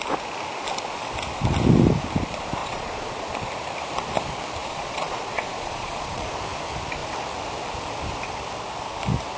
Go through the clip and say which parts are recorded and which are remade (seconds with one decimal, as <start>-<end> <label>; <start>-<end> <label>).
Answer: 0.0-2.6 recorded; 2.6-3.3 remade; 3.3-4.6 recorded; 4.6-6.3 remade; 6.3-9.4 recorded

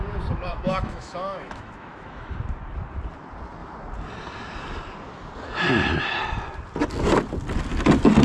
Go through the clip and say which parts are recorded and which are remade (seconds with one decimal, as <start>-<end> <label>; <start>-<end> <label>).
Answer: 0.0-0.5 recorded; 0.5-2.3 remade; 2.3-8.2 recorded

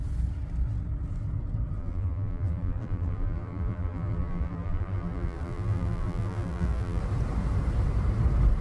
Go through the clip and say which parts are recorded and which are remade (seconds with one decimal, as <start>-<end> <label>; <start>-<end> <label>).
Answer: 0.0-1.8 recorded; 1.8-7.0 remade; 7.0-8.6 recorded